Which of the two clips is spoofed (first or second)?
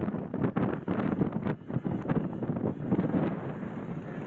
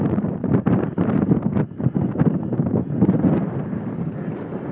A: second